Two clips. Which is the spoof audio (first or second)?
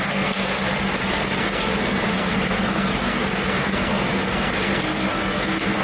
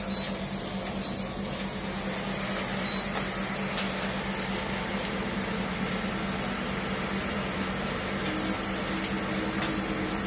first